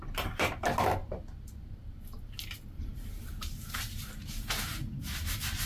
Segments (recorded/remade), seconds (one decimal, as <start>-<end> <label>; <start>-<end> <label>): 0.0-1.0 remade; 1.0-2.2 recorded; 2.2-5.7 remade